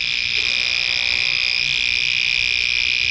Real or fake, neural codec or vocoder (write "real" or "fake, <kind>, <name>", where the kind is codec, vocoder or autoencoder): real